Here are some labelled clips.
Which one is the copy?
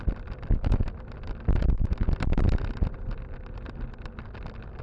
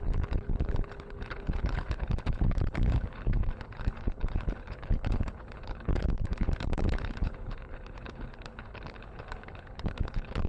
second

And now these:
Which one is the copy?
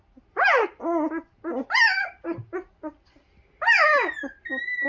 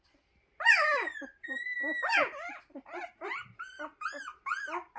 second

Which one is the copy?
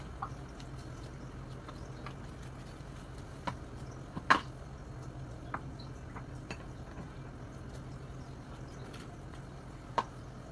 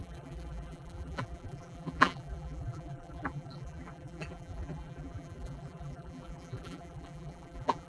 second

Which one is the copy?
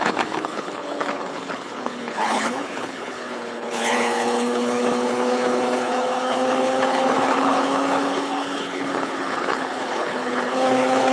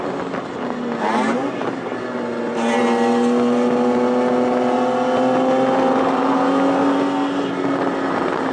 first